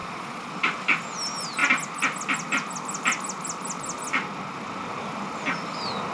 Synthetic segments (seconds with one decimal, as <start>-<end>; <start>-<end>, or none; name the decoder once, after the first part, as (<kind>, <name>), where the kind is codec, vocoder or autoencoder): 0.0-0.5 (vocoder, Vocos)